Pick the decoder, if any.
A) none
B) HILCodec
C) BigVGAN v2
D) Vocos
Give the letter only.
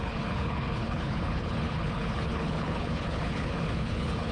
B